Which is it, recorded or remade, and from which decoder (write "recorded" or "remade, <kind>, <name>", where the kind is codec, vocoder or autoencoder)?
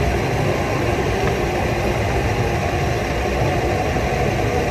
recorded